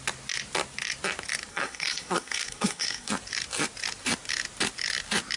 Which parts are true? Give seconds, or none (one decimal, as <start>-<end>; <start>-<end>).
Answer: 0.0-1.5; 3.1-5.4